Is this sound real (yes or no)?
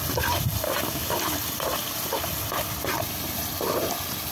yes